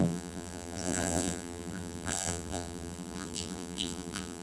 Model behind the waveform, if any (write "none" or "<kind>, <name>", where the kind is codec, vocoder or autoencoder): vocoder, BigVGAN v2